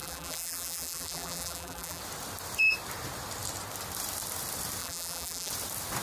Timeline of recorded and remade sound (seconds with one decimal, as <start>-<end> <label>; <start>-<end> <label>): 0.0-2.0 remade; 2.0-4.8 recorded; 4.8-5.5 remade; 5.5-6.0 recorded

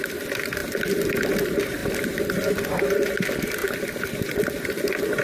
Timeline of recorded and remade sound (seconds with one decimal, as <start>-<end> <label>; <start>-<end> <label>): 0.0-0.6 recorded; 0.6-1.3 remade; 1.3-1.8 recorded; 1.8-2.5 remade; 2.5-3.6 recorded; 3.6-4.5 remade; 4.5-5.2 recorded

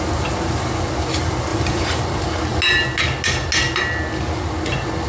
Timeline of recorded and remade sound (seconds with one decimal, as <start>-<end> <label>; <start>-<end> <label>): 0.0-1.5 recorded; 1.5-2.0 remade; 2.0-5.1 recorded

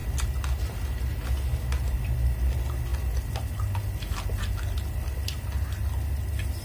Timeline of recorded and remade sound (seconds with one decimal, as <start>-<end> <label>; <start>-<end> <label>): 0.0-6.6 recorded